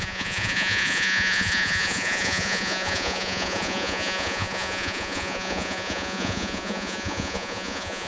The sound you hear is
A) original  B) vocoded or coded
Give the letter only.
B